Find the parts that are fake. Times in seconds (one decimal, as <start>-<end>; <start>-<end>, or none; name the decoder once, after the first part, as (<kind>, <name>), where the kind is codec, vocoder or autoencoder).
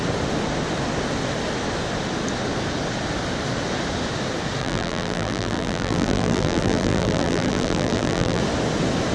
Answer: 4.6-8.4 (vocoder, BigVGAN v2)